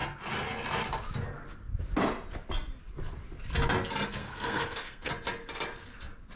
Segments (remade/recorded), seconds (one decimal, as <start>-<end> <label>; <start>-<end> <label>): 0.0-4.2 recorded; 4.2-5.1 remade; 5.1-6.4 recorded